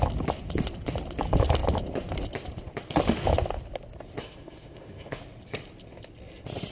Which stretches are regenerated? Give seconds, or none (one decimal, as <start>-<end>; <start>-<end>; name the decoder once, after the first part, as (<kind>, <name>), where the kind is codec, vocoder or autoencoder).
4.2-5.2 (autoencoder, DAC-VAE)